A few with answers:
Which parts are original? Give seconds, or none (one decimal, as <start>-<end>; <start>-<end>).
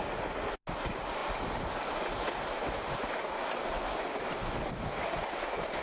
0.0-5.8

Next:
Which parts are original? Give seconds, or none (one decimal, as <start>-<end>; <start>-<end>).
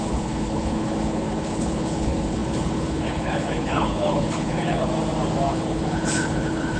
4.9-5.5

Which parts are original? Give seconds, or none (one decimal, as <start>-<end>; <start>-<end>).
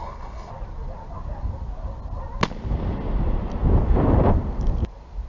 0.5-5.3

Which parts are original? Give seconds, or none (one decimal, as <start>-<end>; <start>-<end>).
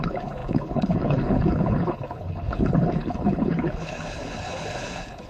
none